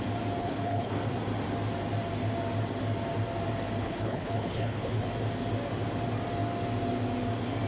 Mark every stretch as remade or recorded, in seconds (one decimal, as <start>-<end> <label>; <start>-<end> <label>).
0.0-0.4 recorded; 0.4-0.9 remade; 0.9-3.8 recorded; 3.8-5.0 remade; 5.0-7.7 recorded